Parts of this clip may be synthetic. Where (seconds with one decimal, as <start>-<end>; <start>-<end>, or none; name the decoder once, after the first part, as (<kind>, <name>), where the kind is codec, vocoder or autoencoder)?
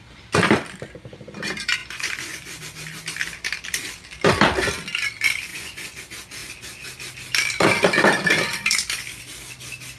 1.8-2.6 (vocoder, Vocos); 5.5-6.0